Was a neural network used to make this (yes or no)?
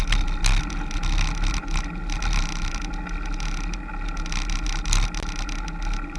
no